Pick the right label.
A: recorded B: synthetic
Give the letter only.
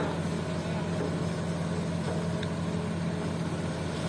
A